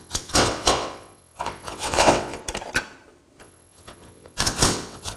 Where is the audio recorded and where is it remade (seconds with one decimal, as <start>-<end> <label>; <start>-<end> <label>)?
0.0-2.4 remade; 2.4-3.4 recorded; 3.4-5.2 remade